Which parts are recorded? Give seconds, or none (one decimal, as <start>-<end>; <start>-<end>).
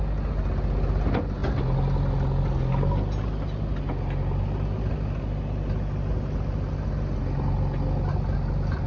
0.0-8.9